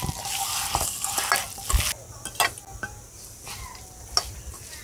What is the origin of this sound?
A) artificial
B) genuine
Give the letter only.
B